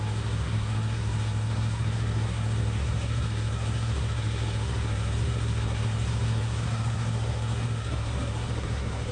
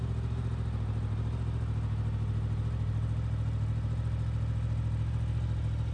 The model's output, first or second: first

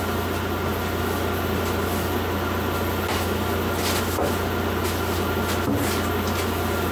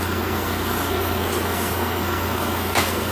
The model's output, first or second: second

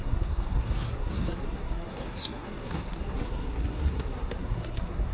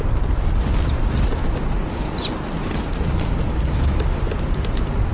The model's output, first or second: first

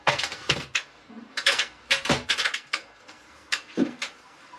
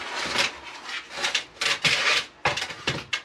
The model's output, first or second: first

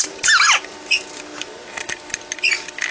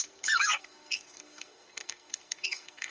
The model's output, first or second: second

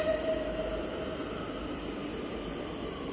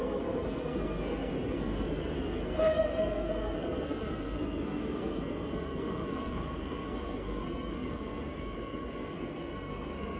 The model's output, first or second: second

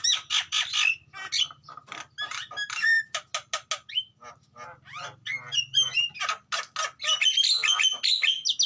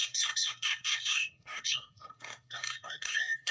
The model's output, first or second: second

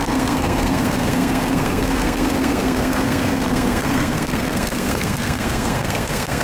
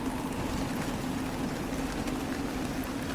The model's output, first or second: first